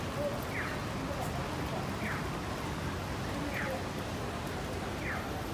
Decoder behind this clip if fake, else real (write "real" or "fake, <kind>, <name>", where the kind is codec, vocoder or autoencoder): real